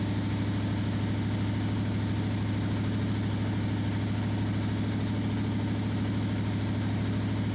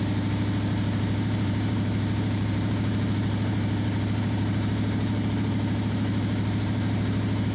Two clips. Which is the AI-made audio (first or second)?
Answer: second